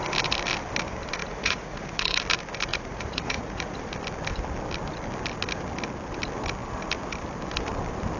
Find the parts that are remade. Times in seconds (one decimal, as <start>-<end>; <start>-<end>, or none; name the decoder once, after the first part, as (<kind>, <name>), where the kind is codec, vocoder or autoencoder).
1.2-2.2 (vocoder, Vocos); 2.7-3.8